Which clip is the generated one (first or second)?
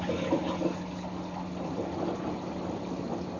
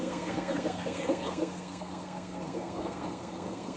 second